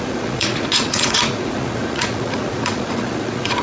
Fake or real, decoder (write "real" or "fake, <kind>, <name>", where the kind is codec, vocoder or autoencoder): fake, vocoder, Vocos